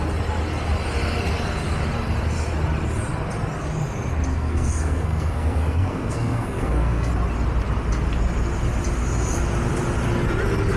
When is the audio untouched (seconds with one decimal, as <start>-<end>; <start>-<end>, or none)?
0.0-4.3; 7.1-10.8